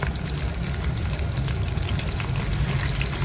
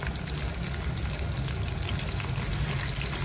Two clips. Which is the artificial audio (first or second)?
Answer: first